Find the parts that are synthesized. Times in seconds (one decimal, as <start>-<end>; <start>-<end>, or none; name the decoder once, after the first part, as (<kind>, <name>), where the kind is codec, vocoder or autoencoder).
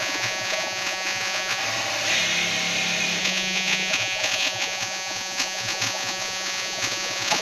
0.0-1.6 (vocoder, Vocos); 3.2-7.4